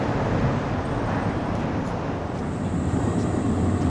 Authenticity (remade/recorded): recorded